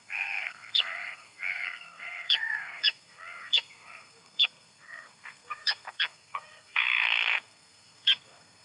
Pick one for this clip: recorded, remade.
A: remade